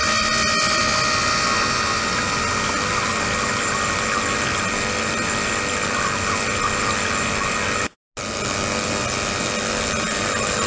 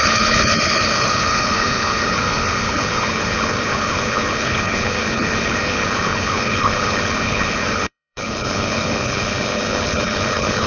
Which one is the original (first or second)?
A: first